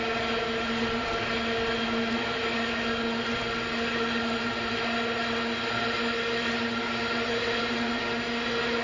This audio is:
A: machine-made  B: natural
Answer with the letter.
B